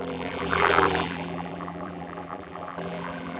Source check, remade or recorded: remade